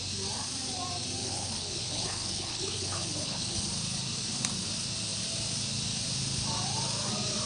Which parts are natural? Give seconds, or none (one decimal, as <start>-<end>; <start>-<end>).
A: 0.0-1.2; 3.7-7.5